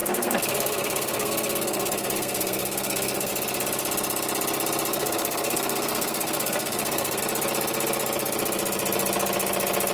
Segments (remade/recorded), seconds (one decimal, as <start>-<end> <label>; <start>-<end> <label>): 0.0-3.3 remade; 3.3-4.9 recorded; 4.9-7.2 remade; 7.2-9.9 recorded